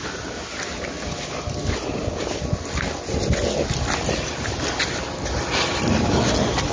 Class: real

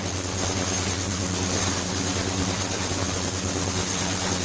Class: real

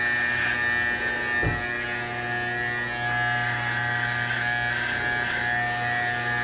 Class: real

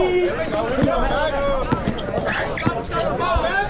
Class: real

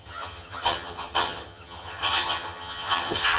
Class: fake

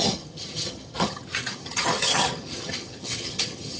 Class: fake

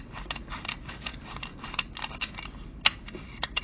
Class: real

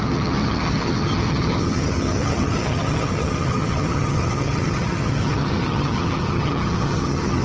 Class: fake